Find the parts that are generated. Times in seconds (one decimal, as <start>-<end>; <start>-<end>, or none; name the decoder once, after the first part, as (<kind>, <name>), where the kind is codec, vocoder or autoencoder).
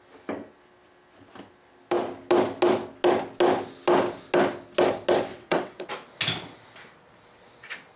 5.3-5.9 (vocoder, WaveNeXt)